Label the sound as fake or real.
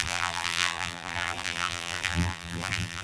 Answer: fake